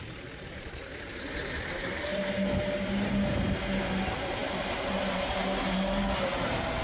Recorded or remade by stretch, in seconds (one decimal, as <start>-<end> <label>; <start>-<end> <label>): 0.0-6.8 remade